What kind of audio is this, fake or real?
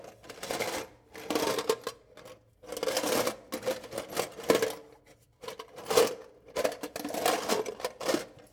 real